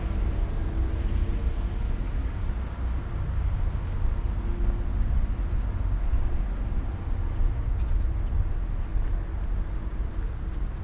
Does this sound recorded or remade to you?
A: recorded